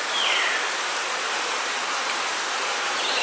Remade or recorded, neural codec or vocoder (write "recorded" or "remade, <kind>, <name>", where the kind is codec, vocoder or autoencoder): remade, vocoder, BigVGAN v2